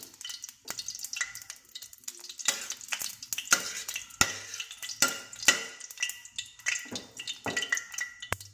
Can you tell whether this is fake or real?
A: real